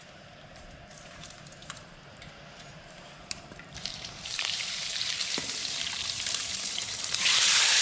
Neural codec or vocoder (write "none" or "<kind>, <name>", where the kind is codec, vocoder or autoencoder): vocoder, BigVGAN v2